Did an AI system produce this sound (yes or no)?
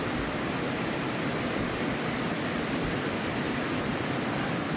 no